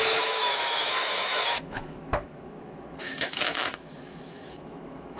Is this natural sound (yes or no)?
no